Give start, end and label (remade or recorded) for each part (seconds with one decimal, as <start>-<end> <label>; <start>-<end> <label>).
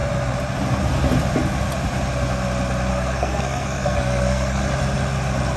0.0-2.9 recorded; 2.9-4.6 remade; 4.6-5.6 recorded